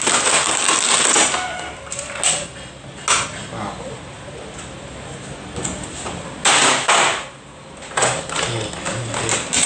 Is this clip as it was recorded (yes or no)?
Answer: yes